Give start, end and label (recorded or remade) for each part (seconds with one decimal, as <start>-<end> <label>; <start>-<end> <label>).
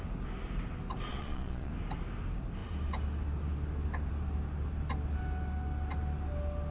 0.0-1.1 recorded; 1.1-1.7 remade; 1.7-6.7 recorded